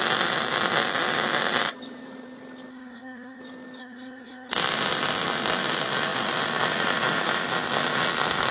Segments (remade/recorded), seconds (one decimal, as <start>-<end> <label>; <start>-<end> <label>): 0.0-2.7 recorded; 2.7-3.4 remade; 3.4-3.8 recorded; 3.8-4.5 remade; 4.5-8.5 recorded